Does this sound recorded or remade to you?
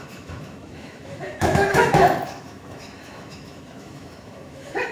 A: remade